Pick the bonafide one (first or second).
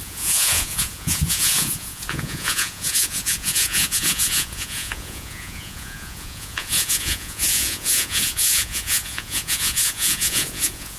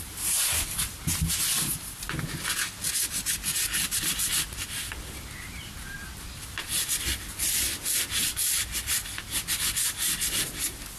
second